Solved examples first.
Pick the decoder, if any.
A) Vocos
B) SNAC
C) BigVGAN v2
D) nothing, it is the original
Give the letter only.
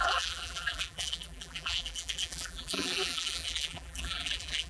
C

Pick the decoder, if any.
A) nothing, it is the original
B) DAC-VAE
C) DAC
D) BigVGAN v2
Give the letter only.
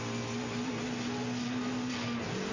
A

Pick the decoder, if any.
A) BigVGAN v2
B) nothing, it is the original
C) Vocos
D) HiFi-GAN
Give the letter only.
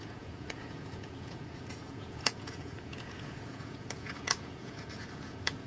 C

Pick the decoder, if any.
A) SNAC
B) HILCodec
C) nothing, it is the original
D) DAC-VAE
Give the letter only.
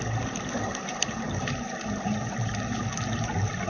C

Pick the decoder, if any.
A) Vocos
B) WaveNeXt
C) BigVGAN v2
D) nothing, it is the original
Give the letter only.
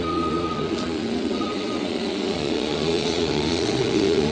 A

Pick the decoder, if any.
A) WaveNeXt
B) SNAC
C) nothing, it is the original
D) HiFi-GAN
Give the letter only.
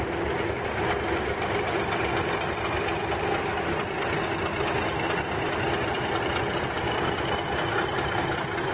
C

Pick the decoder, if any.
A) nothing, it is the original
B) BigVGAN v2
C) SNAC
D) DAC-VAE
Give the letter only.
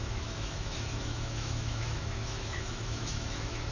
D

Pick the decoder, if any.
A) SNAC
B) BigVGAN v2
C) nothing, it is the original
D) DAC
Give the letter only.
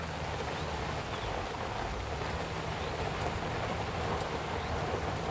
C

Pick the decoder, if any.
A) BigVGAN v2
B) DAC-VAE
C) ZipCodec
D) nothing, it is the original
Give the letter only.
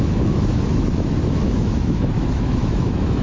B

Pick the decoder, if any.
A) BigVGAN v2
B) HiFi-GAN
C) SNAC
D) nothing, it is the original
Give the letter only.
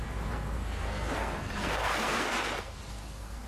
C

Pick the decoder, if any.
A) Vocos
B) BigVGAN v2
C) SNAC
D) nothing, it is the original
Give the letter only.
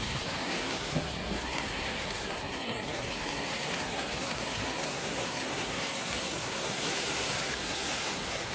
C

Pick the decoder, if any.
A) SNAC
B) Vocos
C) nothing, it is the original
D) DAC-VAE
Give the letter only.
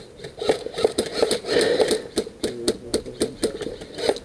C